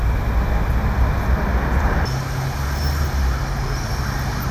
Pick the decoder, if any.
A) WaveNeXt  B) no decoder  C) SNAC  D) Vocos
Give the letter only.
B